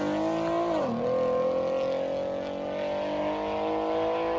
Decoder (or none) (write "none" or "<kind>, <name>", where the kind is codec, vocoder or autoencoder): none